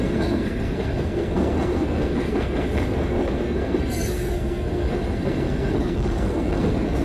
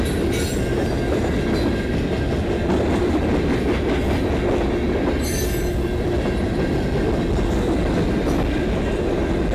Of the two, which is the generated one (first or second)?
first